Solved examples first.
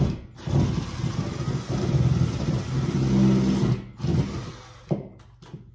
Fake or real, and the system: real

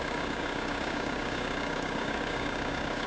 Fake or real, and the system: fake, codec, DAC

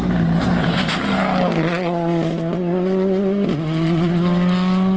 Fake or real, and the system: real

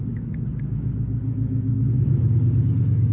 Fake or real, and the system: fake, codec, DAC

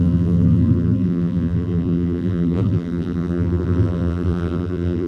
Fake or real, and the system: fake, vocoder, BigVGAN v2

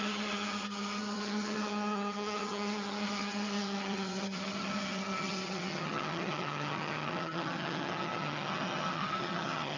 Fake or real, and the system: fake, vocoder, HiFi-GAN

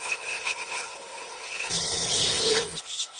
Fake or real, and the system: fake, codec, HILCodec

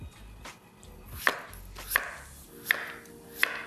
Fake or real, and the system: real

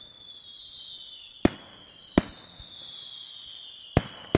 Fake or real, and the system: real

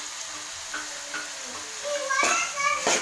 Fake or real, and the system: real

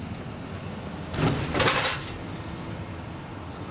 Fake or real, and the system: real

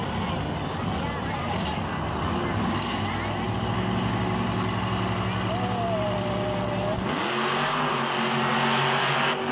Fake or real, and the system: real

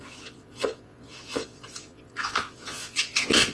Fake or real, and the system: fake, vocoder, Vocos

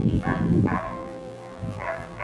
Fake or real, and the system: fake, vocoder, BigVGAN v2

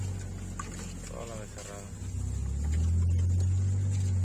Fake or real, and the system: real